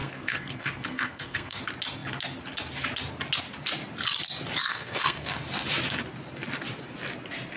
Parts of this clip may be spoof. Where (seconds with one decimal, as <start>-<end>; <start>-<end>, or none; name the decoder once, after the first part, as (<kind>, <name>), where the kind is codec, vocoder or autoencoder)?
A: 0.0-1.6 (codec, SNAC); 4.7-5.4